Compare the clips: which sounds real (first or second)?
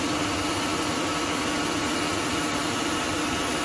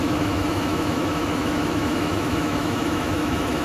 first